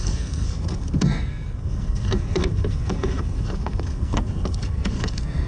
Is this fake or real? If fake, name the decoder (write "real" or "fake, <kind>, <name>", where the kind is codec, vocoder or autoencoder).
fake, codec, SNAC